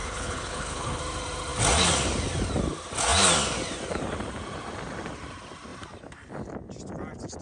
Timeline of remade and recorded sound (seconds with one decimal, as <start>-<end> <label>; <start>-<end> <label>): 0.0-1.0 remade; 1.0-7.4 recorded

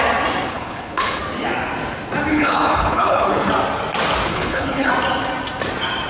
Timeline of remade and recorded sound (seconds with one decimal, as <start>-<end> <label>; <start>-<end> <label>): 0.0-0.5 recorded; 0.5-1.2 remade; 1.2-2.3 recorded; 2.3-3.5 remade; 3.5-4.3 recorded; 4.3-4.9 remade; 4.9-6.1 recorded